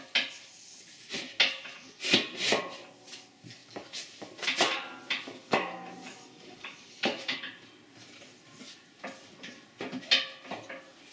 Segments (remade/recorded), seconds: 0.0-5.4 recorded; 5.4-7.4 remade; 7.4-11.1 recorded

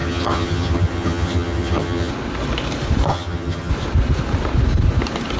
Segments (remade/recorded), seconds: 0.0-2.1 remade; 2.1-3.1 recorded; 3.1-3.7 remade; 3.7-5.4 recorded

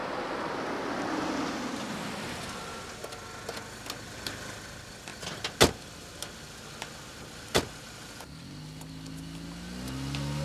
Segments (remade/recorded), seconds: 0.0-10.4 recorded

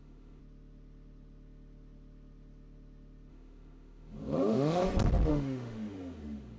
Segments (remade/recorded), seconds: 0.0-0.4 remade; 0.4-3.3 recorded; 3.3-4.8 remade; 4.8-5.3 recorded; 5.3-6.6 remade

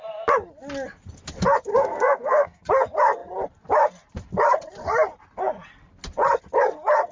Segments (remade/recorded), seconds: 0.0-1.7 recorded; 1.7-2.6 remade; 2.6-7.1 recorded